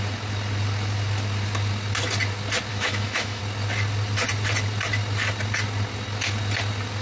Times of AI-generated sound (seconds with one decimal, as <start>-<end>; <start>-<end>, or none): 2.7-3.4